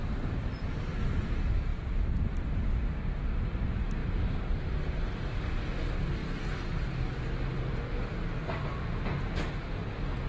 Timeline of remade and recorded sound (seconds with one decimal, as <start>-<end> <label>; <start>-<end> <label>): 0.0-10.3 recorded